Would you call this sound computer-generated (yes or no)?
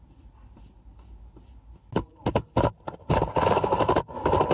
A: no